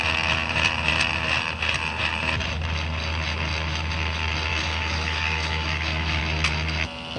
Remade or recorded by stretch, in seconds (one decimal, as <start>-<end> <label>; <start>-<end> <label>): 0.0-4.5 recorded; 4.5-6.2 remade; 6.2-7.2 recorded